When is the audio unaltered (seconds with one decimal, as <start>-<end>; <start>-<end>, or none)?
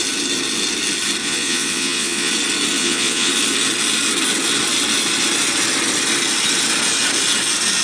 0.0-1.2; 2.3-2.8; 3.3-7.8